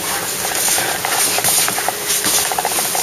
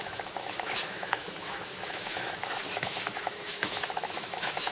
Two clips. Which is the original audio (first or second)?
first